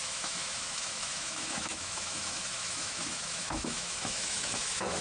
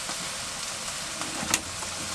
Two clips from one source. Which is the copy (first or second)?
first